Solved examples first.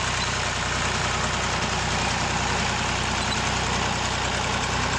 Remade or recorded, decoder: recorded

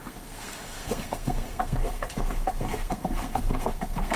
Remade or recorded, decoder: remade, codec, SNAC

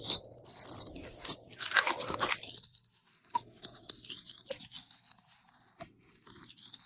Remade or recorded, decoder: recorded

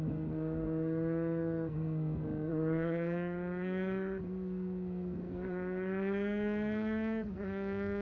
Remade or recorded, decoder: remade, codec, SNAC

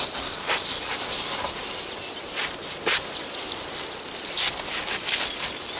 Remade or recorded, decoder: recorded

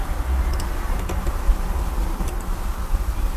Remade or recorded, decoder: recorded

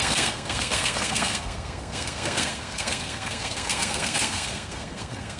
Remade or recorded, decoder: remade, codec, SNAC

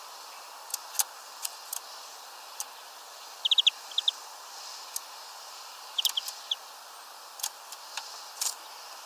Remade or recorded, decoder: recorded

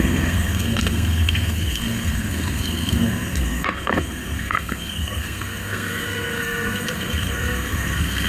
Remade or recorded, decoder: remade, codec, SNAC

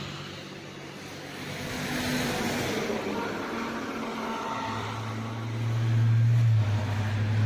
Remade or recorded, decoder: recorded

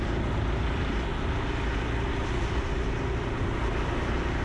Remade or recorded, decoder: recorded